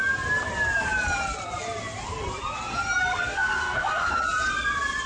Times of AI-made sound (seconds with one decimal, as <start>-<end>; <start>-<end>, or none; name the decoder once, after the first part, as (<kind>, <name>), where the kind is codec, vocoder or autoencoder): 3.1-4.1 (codec, SNAC)